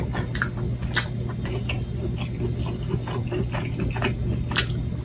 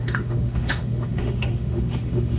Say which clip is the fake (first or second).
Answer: second